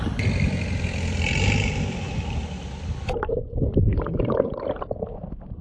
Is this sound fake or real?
real